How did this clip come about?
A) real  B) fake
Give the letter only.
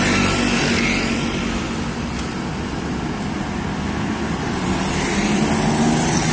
A